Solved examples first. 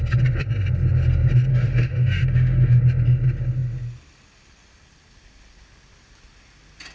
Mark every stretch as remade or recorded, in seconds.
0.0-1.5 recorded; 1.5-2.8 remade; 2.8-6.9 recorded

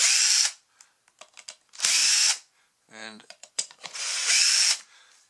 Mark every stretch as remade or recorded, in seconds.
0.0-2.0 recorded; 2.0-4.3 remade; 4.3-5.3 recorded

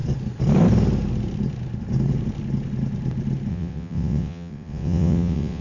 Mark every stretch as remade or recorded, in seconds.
0.0-3.5 recorded; 3.5-5.6 remade

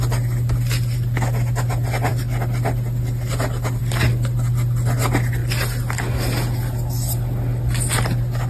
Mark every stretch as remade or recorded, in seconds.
0.0-8.5 recorded